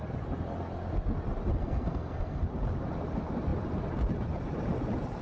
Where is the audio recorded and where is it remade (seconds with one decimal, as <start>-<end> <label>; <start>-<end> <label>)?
0.0-1.6 recorded; 1.6-2.4 remade; 2.4-5.2 recorded